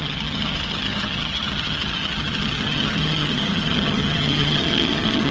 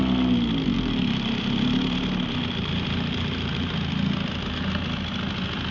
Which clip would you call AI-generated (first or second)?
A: first